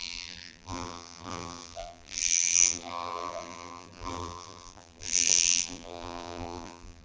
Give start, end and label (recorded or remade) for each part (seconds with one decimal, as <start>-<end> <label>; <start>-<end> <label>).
0.0-7.0 remade